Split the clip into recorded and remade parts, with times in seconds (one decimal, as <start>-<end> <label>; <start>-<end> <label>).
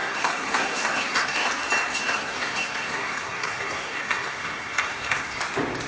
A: 0.0-1.5 remade; 1.5-1.9 recorded; 1.9-5.4 remade; 5.4-5.9 recorded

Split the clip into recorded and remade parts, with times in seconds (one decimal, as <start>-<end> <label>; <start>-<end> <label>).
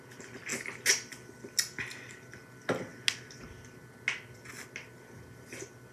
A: 0.0-5.9 recorded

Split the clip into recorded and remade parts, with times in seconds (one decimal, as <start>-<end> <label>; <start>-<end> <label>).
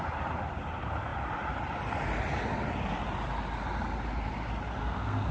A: 0.0-4.8 recorded; 4.8-5.3 remade